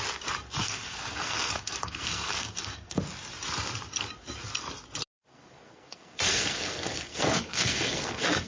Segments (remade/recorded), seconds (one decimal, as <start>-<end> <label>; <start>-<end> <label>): 0.0-0.6 recorded; 0.6-3.0 remade; 3.0-5.3 recorded; 5.3-8.5 remade